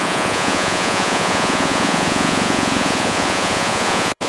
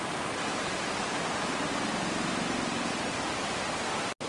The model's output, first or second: first